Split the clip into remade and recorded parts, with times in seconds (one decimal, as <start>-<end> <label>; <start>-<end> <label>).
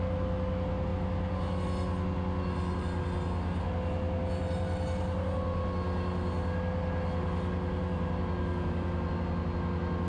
0.0-10.1 recorded